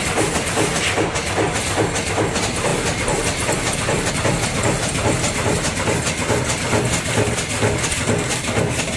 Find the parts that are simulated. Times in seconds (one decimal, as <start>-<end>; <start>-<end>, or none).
none

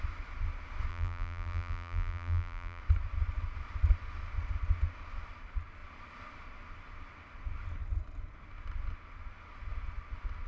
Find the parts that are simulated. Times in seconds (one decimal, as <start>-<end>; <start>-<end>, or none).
0.9-2.8

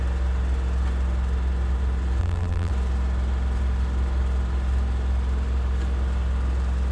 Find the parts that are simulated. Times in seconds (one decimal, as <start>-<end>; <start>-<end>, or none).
2.2-2.7